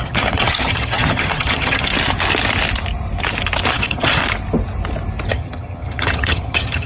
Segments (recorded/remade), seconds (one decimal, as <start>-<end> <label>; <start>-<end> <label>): 0.0-1.9 remade; 1.9-3.7 recorded; 3.7-4.2 remade; 4.2-5.3 recorded; 5.3-6.9 remade